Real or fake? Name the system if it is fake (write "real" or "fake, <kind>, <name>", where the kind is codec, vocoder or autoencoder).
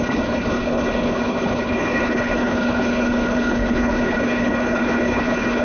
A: fake, codec, HILCodec